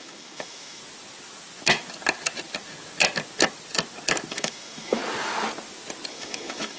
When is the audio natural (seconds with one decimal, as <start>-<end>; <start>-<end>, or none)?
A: 0.8-4.3; 5.0-6.1